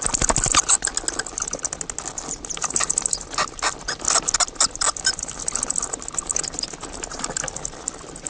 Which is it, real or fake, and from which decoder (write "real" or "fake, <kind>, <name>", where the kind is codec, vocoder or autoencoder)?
real